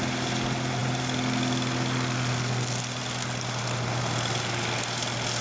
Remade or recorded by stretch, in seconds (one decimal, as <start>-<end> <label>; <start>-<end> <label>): 0.0-5.4 recorded